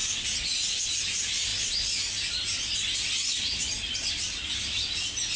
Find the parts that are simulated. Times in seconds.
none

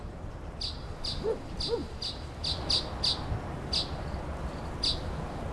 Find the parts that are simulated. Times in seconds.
none

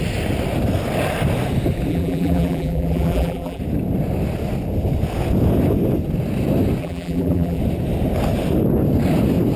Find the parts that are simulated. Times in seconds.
1.9-3.6 (vocoder, BigVGAN v2); 6.8-7.6

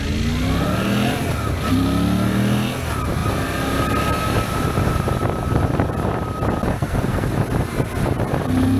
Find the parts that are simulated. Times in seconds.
6.7-7.3 (codec, SNAC)

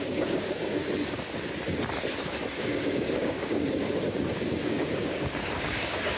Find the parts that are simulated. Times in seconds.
0.0-0.8 (codec, DAC); 2.6-6.2

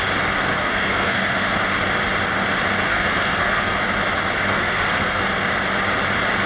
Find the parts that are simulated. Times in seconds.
0.6-1.5 (codec, SNAC); 2.9-3.8; 4.5-5.2

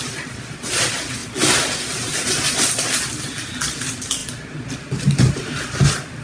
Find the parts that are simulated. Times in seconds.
none

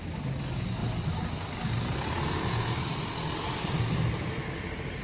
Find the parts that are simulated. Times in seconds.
none